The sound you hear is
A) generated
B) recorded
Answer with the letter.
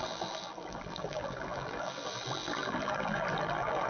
A